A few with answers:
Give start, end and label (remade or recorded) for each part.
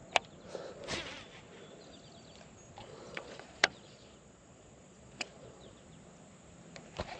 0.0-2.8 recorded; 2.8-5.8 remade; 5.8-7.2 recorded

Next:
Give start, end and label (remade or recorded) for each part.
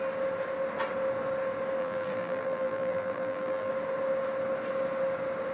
0.0-1.8 recorded; 1.8-3.7 remade; 3.7-5.5 recorded